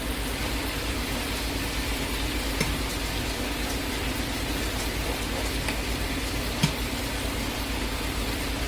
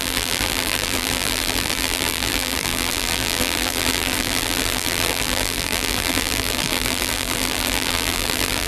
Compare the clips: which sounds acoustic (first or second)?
first